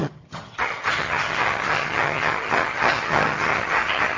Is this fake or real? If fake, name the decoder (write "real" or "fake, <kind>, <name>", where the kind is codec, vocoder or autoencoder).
fake, vocoder, HiFi-GAN